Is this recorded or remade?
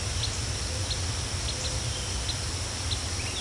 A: recorded